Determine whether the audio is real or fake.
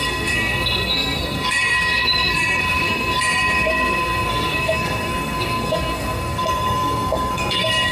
fake